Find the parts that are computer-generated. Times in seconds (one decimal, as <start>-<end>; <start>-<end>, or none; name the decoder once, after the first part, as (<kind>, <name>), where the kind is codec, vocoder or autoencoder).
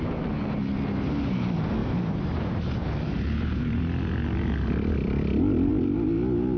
1.8-3.8 (vocoder, BigVGAN v2)